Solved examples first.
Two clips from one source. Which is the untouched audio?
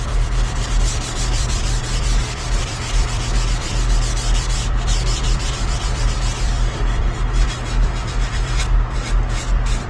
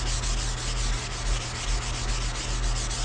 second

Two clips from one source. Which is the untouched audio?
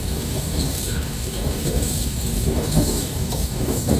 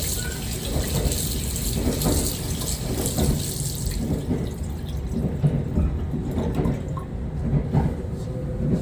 second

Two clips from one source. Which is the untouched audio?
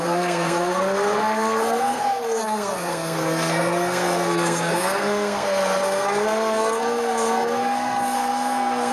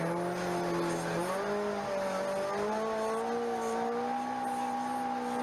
second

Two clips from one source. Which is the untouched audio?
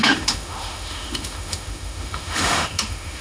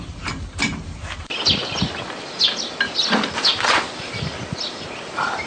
second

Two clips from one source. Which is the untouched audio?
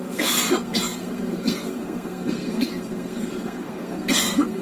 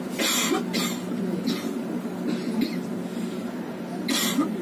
second